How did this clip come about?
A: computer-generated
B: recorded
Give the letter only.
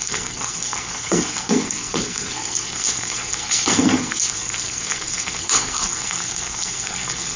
A